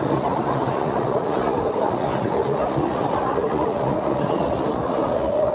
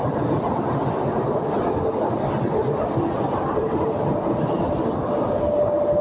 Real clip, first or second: second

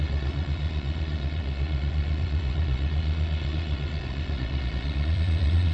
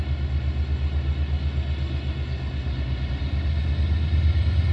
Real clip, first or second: second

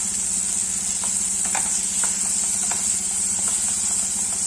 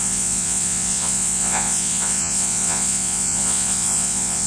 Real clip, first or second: first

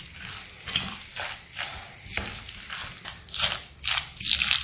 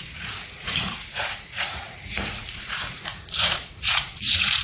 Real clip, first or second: first